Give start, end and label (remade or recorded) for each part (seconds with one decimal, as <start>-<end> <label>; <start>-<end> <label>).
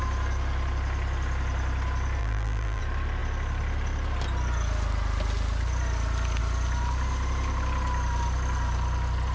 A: 0.0-2.2 recorded; 2.2-2.8 remade; 2.8-9.3 recorded